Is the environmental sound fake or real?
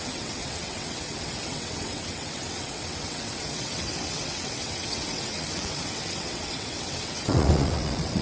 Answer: fake